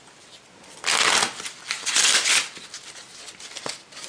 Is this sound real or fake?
real